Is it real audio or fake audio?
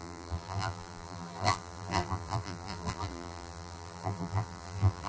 fake